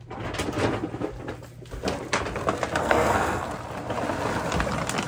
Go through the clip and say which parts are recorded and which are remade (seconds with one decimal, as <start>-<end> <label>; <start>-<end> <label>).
0.0-2.8 recorded; 2.8-3.5 remade; 3.5-5.1 recorded